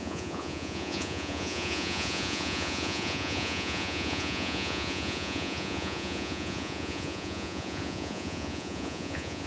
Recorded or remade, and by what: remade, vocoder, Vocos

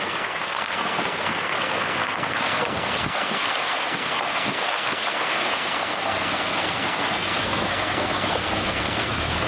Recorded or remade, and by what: remade, codec, SNAC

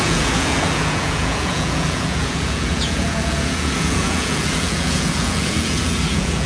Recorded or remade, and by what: remade, vocoder, Vocos